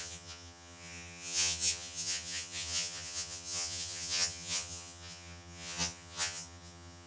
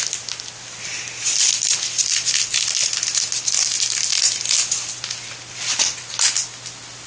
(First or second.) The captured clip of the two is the second